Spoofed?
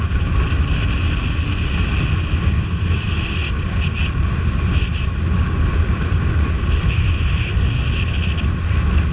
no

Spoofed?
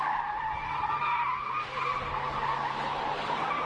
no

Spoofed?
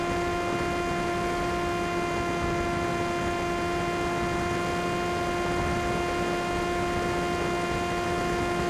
no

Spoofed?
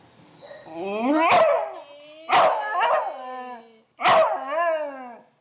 no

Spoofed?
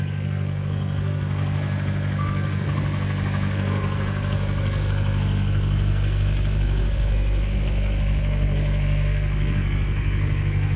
yes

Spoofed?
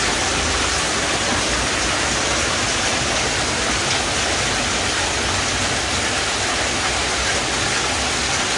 no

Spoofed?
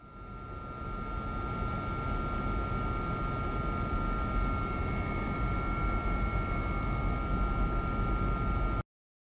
no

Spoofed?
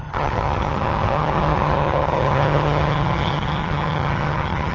yes